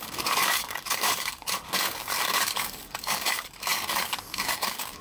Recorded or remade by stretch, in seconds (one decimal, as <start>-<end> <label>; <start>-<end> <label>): 0.0-5.0 remade